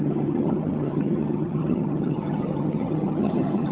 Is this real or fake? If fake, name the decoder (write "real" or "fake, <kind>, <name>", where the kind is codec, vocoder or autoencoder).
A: fake, vocoder, HiFi-GAN